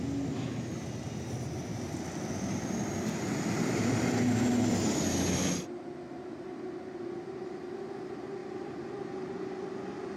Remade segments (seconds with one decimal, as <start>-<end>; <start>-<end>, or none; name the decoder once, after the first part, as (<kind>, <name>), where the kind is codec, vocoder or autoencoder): 8.4-10.2 (vocoder, BigVGAN v2)